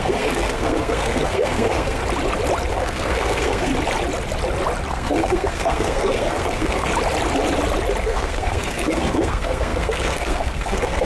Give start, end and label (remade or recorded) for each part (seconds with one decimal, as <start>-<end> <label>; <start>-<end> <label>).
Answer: 0.0-2.0 remade; 2.0-2.7 recorded; 2.7-3.7 remade; 3.7-4.9 recorded; 4.9-6.9 remade; 6.9-8.0 recorded; 8.0-11.0 remade